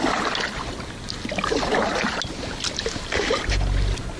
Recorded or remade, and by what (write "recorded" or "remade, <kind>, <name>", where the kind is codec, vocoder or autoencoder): recorded